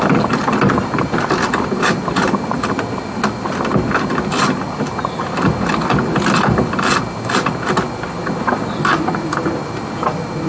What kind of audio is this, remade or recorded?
recorded